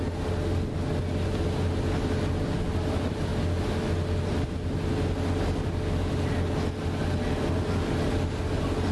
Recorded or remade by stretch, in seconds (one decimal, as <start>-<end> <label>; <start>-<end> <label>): 0.0-8.9 recorded